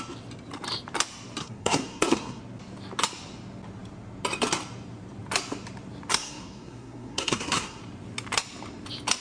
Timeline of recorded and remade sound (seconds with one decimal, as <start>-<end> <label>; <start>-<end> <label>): 0.0-1.4 recorded; 1.4-2.4 remade; 2.4-6.1 recorded; 6.1-7.8 remade; 7.8-9.2 recorded